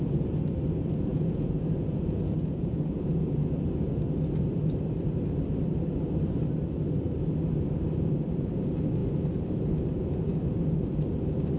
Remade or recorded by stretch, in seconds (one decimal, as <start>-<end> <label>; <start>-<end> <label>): 0.0-1.1 recorded; 1.1-3.6 remade; 3.6-11.6 recorded